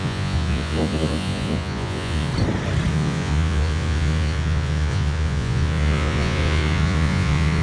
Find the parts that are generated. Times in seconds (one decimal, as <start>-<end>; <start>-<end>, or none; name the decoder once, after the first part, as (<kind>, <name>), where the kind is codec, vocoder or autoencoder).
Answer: 0.0-2.3 (vocoder, Vocos); 2.9-7.6